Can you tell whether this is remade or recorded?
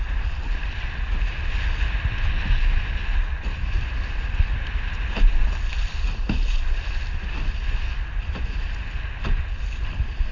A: recorded